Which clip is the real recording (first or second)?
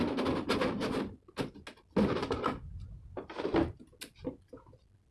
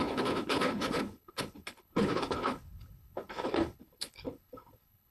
first